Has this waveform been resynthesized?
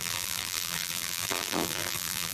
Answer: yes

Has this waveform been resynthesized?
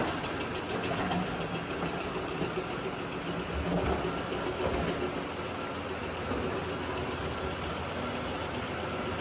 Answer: no